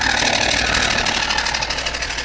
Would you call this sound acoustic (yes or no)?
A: yes